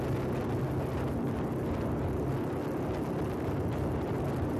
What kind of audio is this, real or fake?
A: real